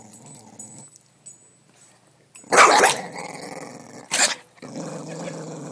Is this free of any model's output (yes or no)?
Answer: yes